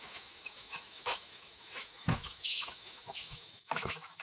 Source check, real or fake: fake